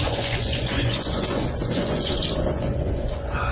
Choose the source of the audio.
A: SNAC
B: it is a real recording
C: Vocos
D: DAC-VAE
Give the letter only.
C